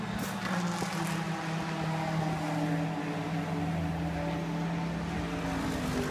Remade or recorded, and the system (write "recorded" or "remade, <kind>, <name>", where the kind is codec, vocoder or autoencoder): recorded